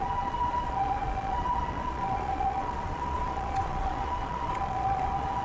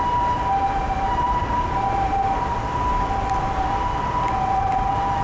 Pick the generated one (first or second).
first